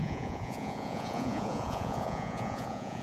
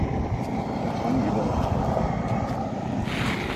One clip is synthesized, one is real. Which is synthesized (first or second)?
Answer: first